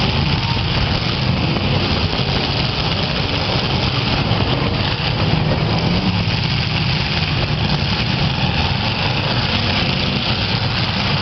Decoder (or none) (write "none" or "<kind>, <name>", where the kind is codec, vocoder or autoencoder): none